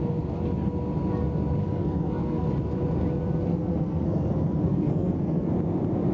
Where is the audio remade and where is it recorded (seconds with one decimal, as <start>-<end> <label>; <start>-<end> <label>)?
0.0-1.6 recorded; 1.6-2.5 remade; 2.5-3.5 recorded; 3.5-5.5 remade; 5.5-6.1 recorded